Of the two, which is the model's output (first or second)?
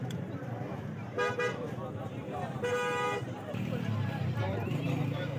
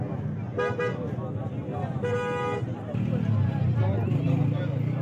first